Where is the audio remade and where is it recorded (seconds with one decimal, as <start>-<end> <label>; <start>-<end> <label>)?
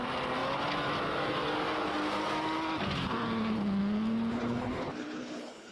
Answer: 0.0-4.3 recorded; 4.3-5.7 remade